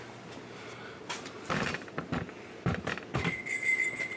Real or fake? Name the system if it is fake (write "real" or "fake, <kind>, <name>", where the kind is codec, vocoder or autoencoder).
real